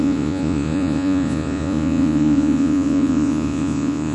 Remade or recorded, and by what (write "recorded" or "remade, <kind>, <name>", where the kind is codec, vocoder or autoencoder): remade, vocoder, Vocos